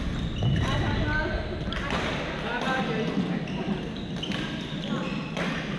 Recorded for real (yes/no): yes